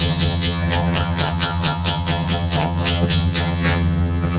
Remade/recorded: remade